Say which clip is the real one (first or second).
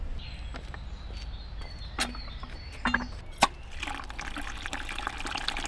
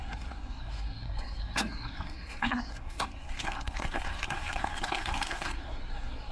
first